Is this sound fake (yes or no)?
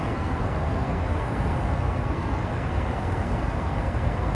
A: yes